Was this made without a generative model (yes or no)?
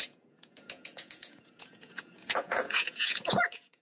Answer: no